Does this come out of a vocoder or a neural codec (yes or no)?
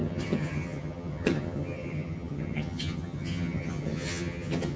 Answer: yes